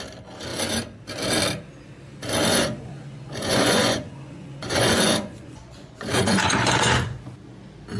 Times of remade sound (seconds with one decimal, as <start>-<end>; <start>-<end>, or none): 2.5-7.2